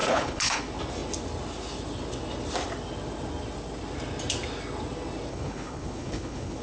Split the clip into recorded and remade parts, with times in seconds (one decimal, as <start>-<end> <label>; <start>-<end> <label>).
0.0-0.6 remade; 0.6-5.3 recorded; 5.3-6.6 remade